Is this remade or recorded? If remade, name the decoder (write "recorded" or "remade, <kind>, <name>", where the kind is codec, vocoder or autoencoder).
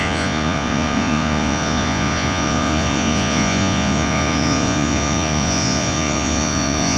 remade, vocoder, Vocos